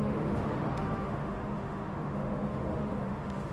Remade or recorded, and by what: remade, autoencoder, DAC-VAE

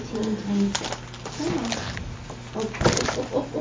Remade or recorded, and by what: recorded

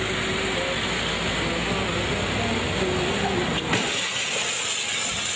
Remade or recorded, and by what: recorded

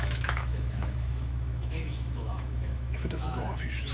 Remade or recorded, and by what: remade, autoencoder, DAC-VAE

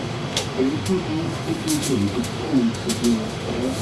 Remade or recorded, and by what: remade, autoencoder, DAC-VAE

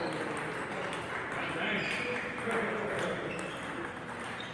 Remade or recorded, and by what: recorded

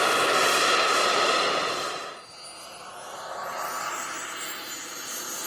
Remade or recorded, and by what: recorded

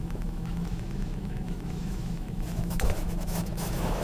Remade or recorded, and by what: remade, autoencoder, DAC-VAE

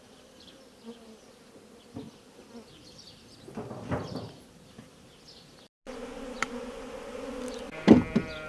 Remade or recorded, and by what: recorded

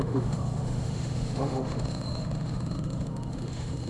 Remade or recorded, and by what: remade, autoencoder, DAC-VAE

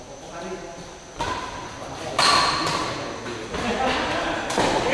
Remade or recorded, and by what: recorded